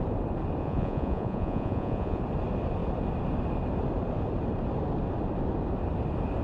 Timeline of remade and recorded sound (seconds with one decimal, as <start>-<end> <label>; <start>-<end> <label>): 0.0-0.6 recorded; 0.6-2.2 remade; 2.2-6.4 recorded